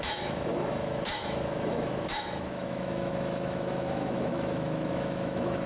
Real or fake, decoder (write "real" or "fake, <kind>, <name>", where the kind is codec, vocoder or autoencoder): fake, autoencoder, DAC-VAE